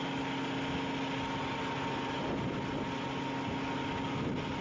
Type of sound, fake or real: real